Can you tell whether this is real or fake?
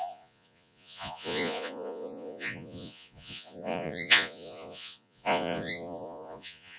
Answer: fake